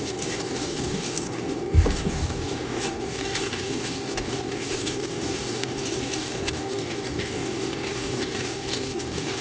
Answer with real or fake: fake